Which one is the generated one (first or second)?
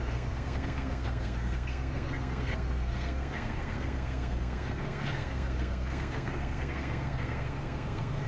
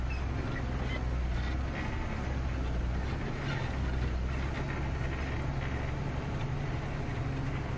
first